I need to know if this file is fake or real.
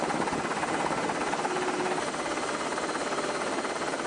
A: real